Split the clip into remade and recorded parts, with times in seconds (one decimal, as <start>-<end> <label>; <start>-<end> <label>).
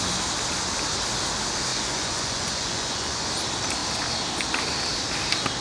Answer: 0.0-1.7 recorded; 1.7-3.3 remade; 3.3-5.6 recorded